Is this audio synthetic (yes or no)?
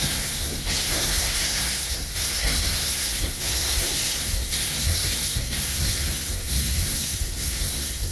yes